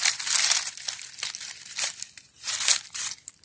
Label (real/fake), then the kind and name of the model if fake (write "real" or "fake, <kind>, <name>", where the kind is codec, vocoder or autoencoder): real